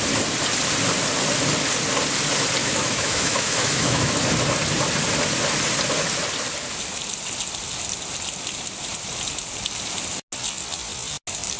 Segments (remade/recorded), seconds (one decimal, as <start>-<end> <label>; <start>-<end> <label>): 0.0-2.6 recorded; 2.6-4.1 remade; 4.1-11.6 recorded